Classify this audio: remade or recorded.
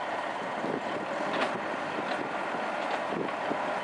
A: recorded